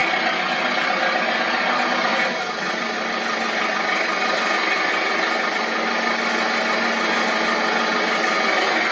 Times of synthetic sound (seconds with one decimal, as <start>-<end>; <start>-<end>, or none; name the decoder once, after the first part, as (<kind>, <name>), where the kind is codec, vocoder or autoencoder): none